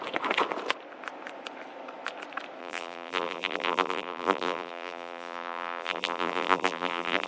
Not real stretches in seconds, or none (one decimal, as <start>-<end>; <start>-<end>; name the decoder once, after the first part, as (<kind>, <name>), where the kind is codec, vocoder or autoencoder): 2.6-7.3 (vocoder, BigVGAN v2)